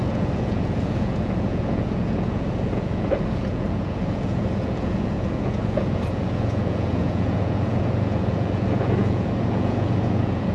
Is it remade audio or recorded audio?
remade